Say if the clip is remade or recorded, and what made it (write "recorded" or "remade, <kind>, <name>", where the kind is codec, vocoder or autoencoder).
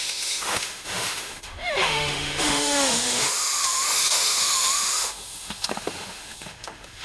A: remade, autoencoder, DAC-VAE